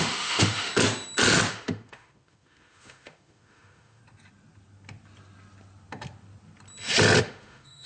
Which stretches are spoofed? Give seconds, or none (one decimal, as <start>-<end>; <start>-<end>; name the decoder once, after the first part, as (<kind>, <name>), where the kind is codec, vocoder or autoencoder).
0.0-0.7 (autoencoder, DAC-VAE); 1.5-4.0; 7.2-7.9